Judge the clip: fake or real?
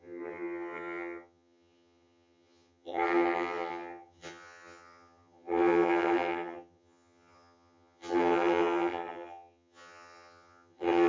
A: fake